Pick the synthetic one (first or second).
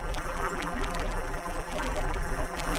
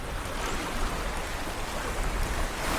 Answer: first